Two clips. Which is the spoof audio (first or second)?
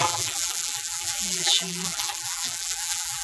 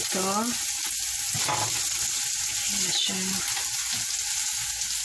first